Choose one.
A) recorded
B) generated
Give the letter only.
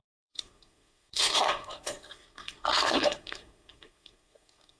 B